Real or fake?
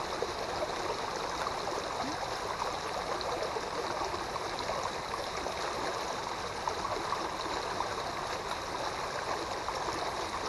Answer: real